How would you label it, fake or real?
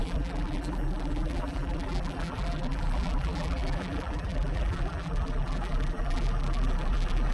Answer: fake